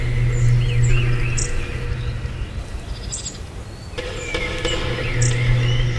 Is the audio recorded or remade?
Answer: recorded